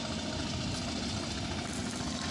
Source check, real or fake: real